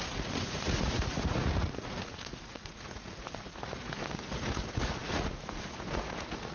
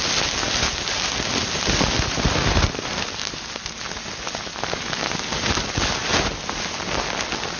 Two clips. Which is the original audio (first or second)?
second